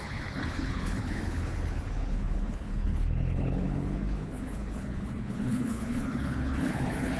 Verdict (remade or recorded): remade